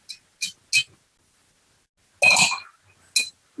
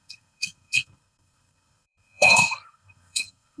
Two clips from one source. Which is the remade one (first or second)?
second